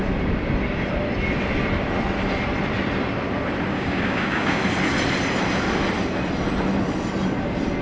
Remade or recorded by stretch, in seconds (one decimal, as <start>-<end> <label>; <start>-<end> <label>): 0.0-3.7 recorded; 3.7-4.6 remade; 4.6-7.8 recorded